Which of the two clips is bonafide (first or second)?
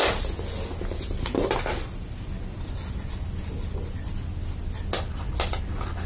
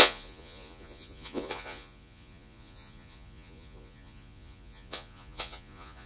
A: first